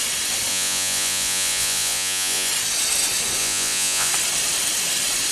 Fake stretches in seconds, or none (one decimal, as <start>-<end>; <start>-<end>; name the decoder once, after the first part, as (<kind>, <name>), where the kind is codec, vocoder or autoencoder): 0.5-2.5 (vocoder, Vocos); 3.4-4.1